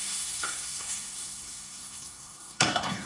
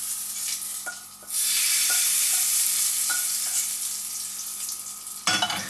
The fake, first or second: first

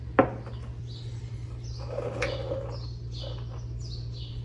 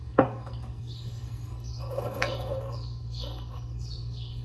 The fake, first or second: second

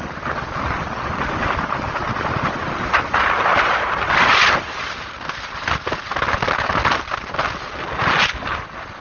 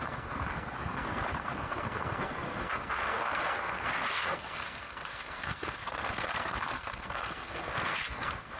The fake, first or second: second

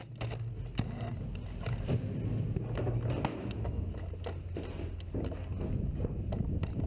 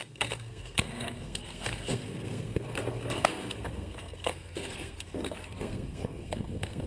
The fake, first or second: second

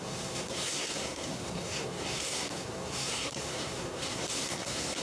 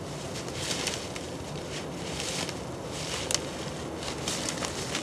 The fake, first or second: first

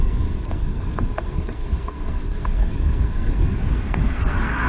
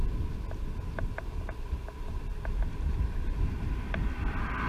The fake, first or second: first